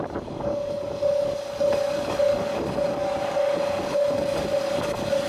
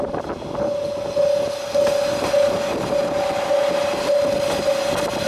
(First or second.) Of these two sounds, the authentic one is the second